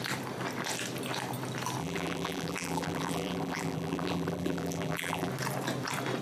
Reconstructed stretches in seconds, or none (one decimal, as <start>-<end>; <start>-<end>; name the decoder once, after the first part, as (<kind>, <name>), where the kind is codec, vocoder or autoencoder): 1.8-5.3 (vocoder, BigVGAN v2)